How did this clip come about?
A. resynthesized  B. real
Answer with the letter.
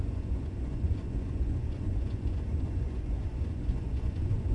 A